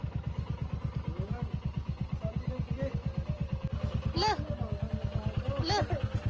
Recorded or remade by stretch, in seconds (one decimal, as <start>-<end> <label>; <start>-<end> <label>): 0.0-6.3 recorded